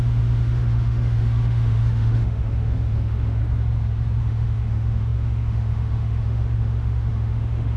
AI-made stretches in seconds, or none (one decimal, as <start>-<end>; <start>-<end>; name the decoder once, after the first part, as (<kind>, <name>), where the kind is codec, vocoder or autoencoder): 0.0-3.4 (autoencoder, DAC-VAE); 4.2-7.8